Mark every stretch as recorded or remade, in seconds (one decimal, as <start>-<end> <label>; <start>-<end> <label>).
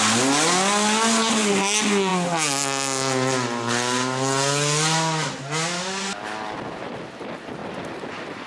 0.0-8.5 recorded